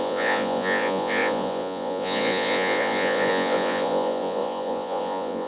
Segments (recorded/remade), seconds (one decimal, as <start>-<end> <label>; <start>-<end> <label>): 0.0-5.5 remade